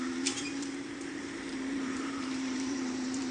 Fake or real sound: fake